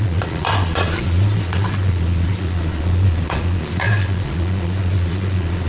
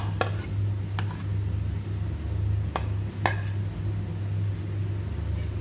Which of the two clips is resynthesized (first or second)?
first